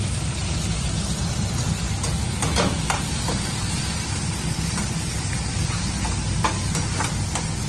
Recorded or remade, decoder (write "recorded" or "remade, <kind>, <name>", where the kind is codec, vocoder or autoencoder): recorded